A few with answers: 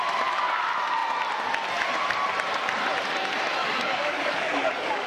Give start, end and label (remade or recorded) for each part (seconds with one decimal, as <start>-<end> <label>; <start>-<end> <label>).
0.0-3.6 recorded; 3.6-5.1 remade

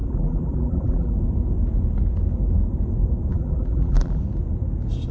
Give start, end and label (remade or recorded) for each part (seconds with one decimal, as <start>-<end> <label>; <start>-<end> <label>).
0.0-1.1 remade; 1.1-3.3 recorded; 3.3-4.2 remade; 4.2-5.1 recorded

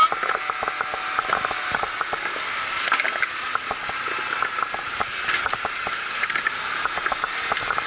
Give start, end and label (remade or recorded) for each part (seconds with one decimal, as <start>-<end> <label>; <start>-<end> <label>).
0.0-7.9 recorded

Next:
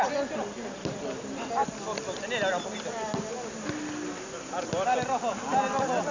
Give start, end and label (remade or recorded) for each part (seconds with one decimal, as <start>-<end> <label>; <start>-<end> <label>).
0.0-6.1 recorded